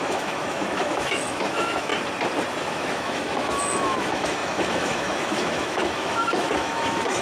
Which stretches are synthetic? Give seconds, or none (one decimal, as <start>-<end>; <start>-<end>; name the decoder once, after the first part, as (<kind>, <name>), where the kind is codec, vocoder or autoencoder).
0.0-1.9 (autoencoder, DAC-VAE); 2.6-7.2